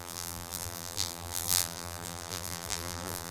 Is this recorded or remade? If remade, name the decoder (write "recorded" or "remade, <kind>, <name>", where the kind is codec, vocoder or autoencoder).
remade, vocoder, BigVGAN v2